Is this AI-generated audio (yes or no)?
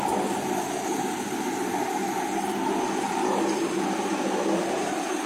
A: no